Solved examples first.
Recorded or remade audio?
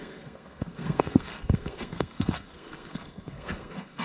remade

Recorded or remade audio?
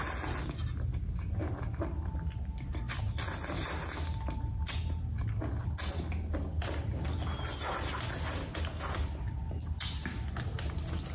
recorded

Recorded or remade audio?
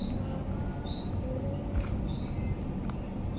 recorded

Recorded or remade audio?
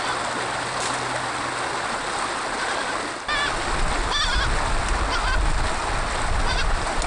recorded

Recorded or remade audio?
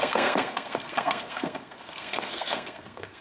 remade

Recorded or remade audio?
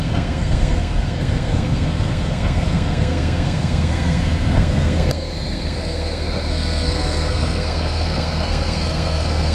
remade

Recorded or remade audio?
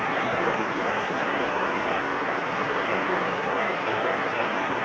remade